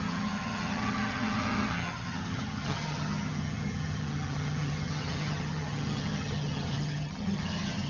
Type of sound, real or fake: fake